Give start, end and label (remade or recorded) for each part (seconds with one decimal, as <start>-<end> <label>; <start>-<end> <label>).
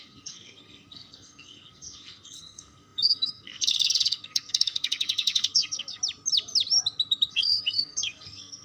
0.0-6.0 remade; 6.0-7.3 recorded; 7.3-8.6 remade